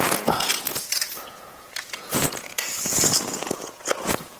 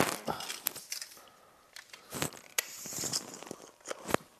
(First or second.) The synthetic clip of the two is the first